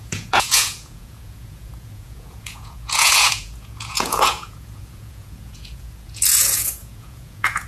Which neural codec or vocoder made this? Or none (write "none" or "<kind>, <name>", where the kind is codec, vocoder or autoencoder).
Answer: vocoder, Vocos